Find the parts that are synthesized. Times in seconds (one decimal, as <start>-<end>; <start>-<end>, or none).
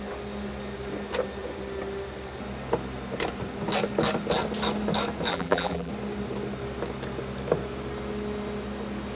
5.3-5.9